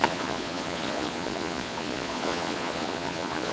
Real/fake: fake